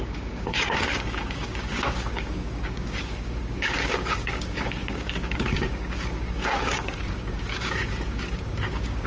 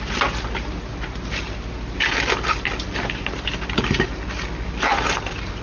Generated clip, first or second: first